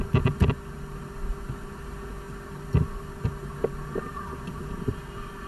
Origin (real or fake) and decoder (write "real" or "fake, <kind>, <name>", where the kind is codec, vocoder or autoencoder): real